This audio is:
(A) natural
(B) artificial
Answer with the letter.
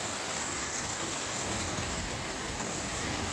B